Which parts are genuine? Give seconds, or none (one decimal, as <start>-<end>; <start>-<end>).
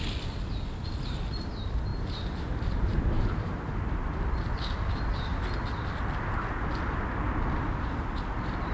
0.0-1.9; 3.8-8.7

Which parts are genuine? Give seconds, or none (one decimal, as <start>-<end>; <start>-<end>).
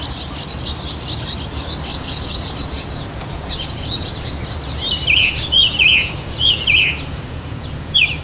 0.0-1.9; 4.4-5.2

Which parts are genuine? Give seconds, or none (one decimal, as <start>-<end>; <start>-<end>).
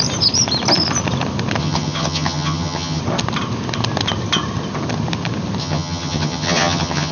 0.0-1.6; 3.0-5.6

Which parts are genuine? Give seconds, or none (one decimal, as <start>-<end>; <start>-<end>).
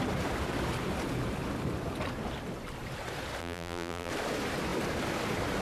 0.0-3.4; 4.1-5.6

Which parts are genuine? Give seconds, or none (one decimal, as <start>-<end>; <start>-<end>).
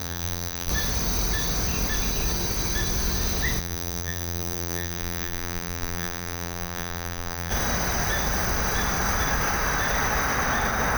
0.7-3.6; 7.5-11.0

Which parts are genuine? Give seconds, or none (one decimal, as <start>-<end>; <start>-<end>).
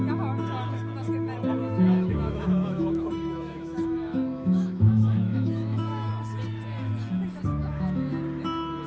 0.0-1.6; 6.1-7.6; 8.1-8.9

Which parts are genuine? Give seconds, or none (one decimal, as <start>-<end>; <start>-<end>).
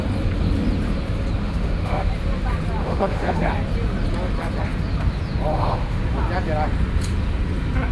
0.0-1.4; 2.1-2.8; 3.5-5.5; 6.0-7.9